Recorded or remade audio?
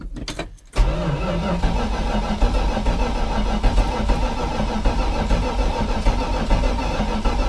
recorded